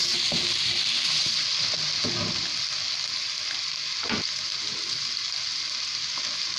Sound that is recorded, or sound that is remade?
recorded